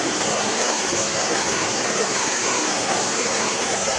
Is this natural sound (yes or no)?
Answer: no